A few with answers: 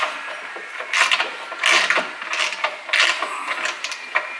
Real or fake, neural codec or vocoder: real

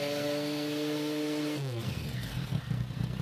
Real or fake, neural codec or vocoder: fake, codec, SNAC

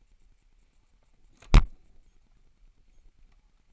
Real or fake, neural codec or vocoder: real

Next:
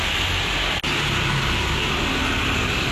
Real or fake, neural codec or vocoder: real